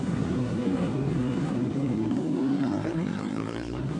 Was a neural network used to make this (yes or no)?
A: yes